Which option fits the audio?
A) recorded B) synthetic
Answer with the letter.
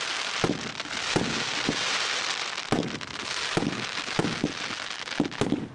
A